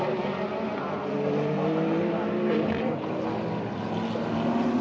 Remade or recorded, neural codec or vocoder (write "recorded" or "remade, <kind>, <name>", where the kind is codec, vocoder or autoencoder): recorded